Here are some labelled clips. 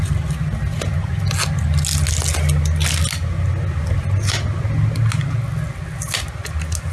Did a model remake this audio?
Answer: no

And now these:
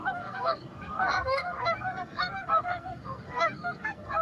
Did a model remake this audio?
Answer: yes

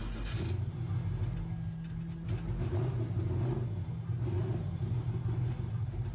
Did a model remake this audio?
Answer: no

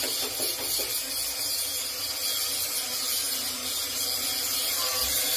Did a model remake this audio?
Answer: no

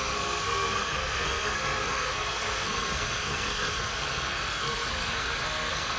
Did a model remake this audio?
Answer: yes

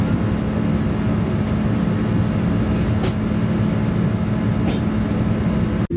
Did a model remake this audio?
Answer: no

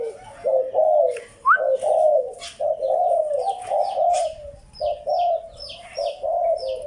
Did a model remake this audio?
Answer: no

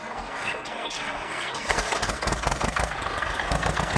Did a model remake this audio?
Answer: yes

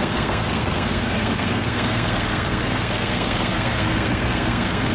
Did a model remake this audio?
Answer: yes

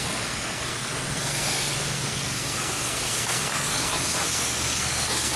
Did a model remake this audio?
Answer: yes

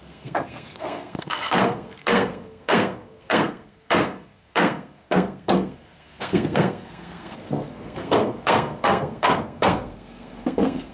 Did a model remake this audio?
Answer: yes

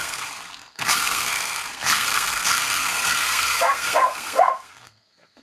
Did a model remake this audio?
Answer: yes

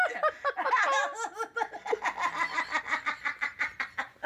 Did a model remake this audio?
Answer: no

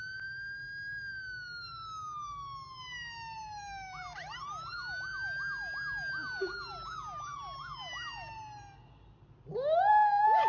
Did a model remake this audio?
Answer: no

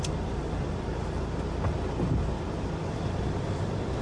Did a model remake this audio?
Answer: no